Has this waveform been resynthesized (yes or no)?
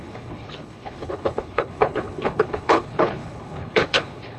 yes